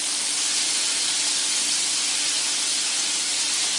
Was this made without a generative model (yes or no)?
yes